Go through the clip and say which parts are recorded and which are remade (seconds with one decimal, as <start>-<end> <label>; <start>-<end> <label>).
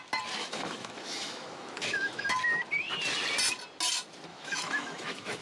0.0-0.4 recorded; 0.4-2.3 remade; 2.3-4.3 recorded; 4.3-5.4 remade